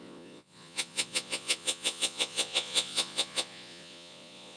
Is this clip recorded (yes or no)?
no